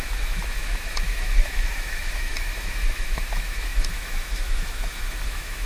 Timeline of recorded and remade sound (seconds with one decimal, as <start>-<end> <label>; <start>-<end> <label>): 0.0-5.7 remade

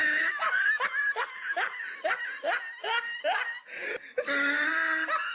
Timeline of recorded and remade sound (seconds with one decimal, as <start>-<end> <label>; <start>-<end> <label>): 0.0-5.3 recorded

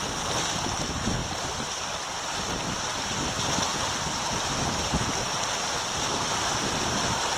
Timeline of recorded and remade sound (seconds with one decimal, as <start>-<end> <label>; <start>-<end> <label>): 0.0-7.4 recorded

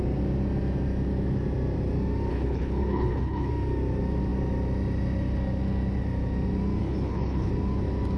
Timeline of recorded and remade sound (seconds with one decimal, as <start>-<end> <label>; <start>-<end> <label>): 0.0-2.3 recorded; 2.3-3.5 remade; 3.5-6.8 recorded; 6.8-7.5 remade; 7.5-8.2 recorded

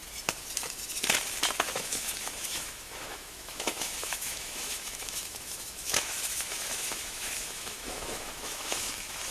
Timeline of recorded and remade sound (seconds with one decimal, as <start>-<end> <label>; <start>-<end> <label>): 0.0-1.6 recorded; 1.6-9.3 remade